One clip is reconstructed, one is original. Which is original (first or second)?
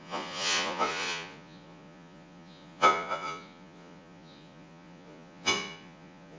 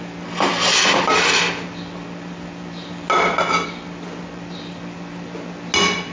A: second